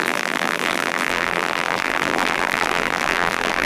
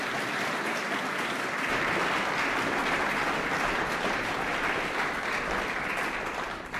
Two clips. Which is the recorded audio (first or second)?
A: second